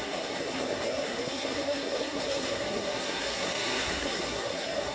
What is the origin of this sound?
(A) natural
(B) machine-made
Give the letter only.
B